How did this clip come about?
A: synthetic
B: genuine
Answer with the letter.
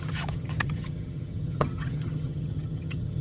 A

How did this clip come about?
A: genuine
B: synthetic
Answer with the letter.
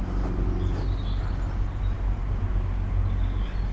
A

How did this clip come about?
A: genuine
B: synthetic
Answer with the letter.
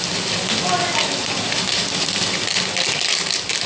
A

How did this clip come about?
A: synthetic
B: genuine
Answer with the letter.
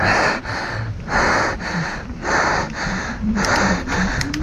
B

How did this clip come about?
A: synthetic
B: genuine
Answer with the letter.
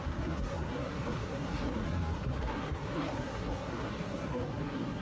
A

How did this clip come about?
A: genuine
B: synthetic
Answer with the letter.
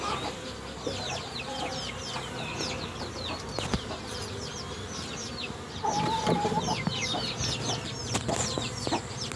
A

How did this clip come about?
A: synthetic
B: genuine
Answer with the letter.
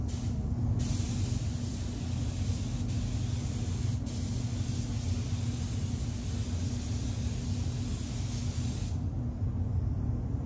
B